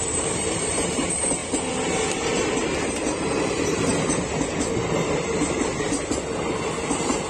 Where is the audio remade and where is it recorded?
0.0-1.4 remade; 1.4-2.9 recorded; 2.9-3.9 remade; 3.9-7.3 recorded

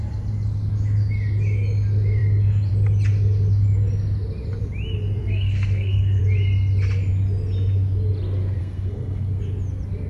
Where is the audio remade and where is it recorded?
0.0-5.2 recorded; 5.2-6.2 remade; 6.2-8.6 recorded; 8.6-9.4 remade; 9.4-10.1 recorded